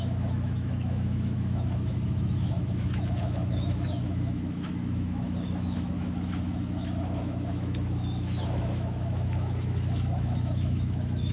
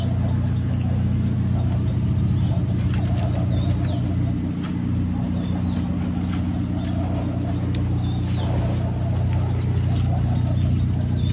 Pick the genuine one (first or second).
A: second